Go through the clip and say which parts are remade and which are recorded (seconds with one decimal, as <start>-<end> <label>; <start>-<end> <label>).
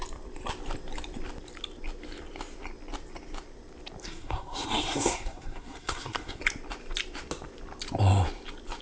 0.0-4.0 recorded; 4.0-6.4 remade; 6.4-8.8 recorded